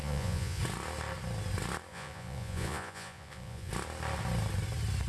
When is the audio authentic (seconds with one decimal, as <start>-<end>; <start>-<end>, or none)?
0.6-1.9; 3.7-5.1